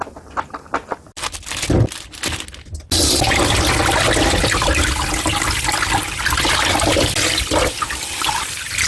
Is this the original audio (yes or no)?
yes